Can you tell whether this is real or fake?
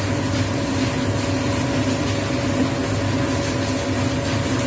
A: real